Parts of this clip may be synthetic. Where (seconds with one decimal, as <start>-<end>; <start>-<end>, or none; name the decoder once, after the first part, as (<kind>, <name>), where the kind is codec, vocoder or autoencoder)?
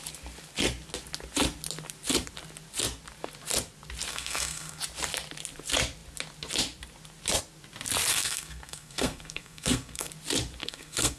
4.1-4.8 (codec, SNAC); 8.1-10.1; 10.6-11.2